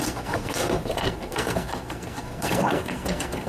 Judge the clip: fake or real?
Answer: fake